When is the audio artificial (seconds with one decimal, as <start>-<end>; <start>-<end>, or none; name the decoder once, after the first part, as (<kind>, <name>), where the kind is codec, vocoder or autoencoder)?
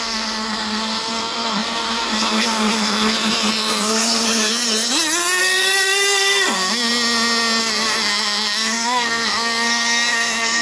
0.0-4.6 (codec, SNAC); 5.4-6.9; 7.6-10.6